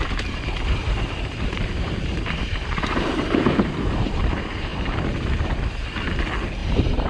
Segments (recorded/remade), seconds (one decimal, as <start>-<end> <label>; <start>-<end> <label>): 0.0-0.8 recorded; 0.8-4.2 remade; 4.2-6.6 recorded; 6.6-7.1 remade